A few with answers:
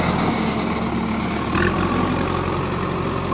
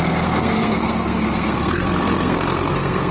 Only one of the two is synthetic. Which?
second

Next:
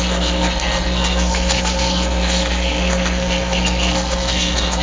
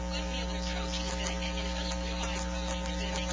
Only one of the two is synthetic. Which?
first